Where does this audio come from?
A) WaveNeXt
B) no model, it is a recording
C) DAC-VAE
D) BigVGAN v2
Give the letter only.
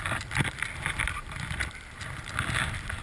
D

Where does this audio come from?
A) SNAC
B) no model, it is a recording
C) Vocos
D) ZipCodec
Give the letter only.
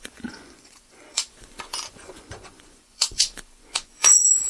C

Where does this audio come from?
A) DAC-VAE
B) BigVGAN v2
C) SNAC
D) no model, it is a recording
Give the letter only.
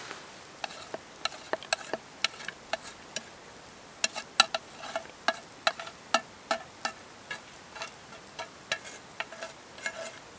D